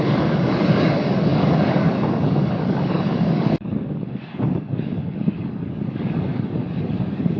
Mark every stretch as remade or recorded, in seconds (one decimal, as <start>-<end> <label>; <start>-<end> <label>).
0.0-7.4 remade